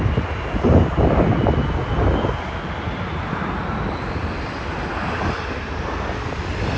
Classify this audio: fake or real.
real